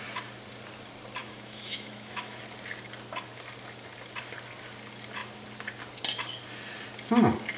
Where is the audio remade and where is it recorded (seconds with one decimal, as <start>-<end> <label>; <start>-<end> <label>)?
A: 0.0-1.2 recorded; 1.2-2.4 remade; 2.4-7.6 recorded